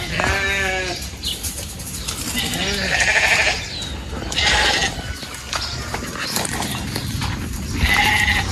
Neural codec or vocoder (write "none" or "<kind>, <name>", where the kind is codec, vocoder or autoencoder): none